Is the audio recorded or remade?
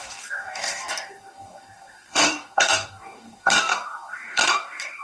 remade